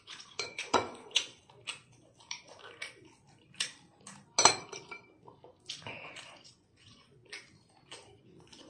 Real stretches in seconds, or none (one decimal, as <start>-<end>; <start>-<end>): 1.4-5.7; 7.2-8.2